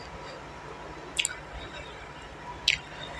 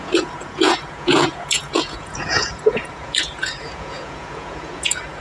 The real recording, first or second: first